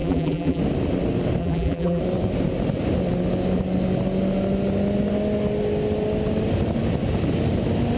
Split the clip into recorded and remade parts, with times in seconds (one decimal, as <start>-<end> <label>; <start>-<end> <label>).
0.0-0.6 remade; 0.6-1.4 recorded; 1.4-2.0 remade; 2.0-8.0 recorded